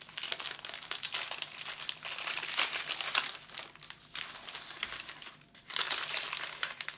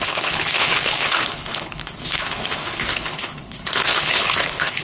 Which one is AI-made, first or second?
second